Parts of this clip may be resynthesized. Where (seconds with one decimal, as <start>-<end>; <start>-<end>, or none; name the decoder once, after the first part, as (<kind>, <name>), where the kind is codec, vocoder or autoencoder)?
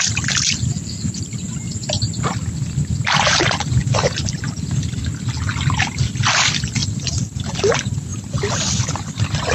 3.8-5.0 (vocoder, BigVGAN v2); 6.8-7.5